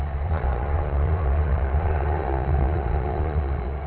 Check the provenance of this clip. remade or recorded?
remade